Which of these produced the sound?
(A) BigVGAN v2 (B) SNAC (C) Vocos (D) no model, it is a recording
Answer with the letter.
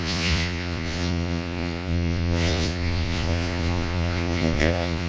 C